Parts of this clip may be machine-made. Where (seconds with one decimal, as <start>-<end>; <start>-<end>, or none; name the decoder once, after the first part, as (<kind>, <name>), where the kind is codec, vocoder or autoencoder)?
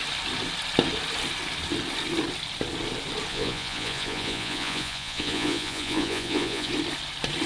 3.3-6.7 (vocoder, Vocos)